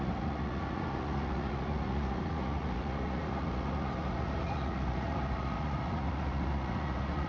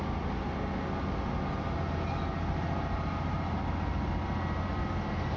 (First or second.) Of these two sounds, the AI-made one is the first